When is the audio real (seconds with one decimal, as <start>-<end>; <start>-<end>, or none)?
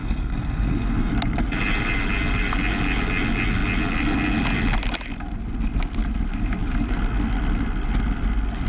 1.1-8.7